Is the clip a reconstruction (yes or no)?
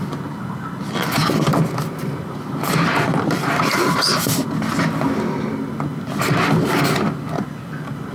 no